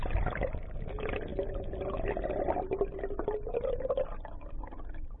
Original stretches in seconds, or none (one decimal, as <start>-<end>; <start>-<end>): 0.0-5.2